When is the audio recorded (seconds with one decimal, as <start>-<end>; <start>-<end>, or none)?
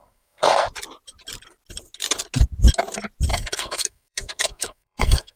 0.7-3.3